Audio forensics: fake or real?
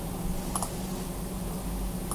real